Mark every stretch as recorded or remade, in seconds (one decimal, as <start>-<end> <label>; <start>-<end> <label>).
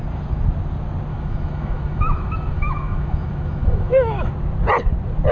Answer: 0.0-1.1 recorded; 1.1-4.3 remade; 4.3-5.3 recorded